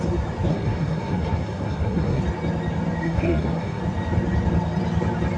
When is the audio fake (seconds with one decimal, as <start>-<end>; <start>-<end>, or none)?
0.5-2.2; 3.0-3.8